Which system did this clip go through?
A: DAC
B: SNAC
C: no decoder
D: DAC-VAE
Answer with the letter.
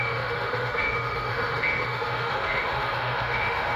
D